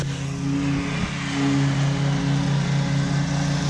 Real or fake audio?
real